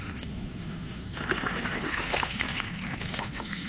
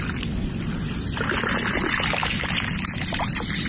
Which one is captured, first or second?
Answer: second